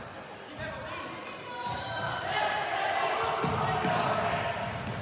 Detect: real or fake real